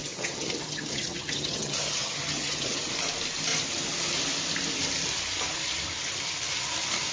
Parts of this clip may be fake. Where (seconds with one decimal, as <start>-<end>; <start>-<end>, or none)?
0.0-2.9